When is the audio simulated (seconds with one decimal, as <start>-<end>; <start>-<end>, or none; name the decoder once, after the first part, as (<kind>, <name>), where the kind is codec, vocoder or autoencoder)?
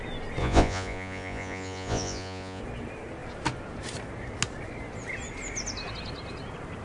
0.4-2.6 (vocoder, Vocos)